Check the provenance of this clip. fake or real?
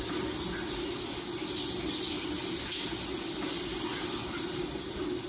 real